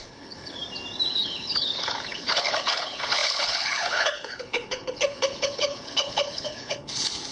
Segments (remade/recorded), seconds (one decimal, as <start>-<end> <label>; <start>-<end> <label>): 0.0-0.6 remade; 0.6-1.1 recorded; 1.1-7.3 remade